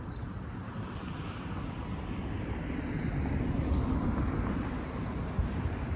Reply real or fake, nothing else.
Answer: real